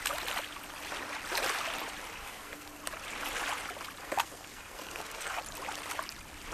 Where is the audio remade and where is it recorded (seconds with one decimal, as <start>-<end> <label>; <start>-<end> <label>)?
0.0-2.2 recorded; 2.2-2.8 remade; 2.8-4.0 recorded; 4.0-5.4 remade; 5.4-6.5 recorded